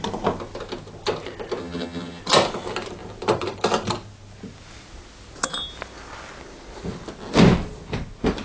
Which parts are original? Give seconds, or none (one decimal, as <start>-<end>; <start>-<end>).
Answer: 0.0-1.6; 2.2-8.4